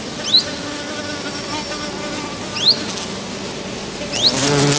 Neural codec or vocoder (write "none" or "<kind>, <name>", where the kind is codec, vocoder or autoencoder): none